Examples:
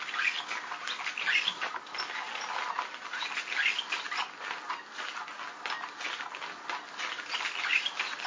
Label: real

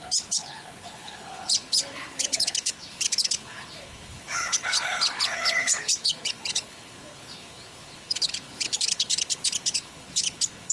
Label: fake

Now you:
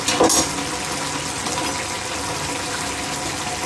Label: real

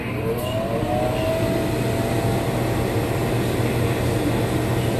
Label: real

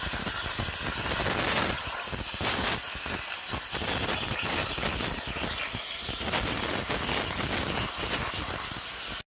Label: real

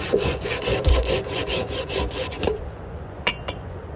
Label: fake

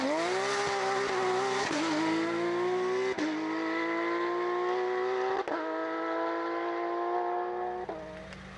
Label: real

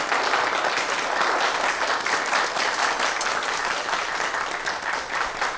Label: real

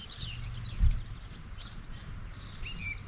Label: real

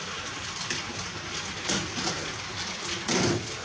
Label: real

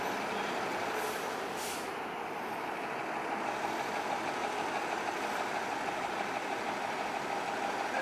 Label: real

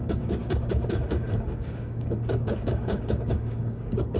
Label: fake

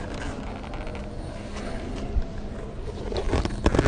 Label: real